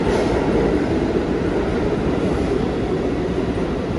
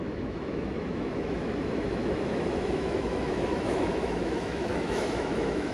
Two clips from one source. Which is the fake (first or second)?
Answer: second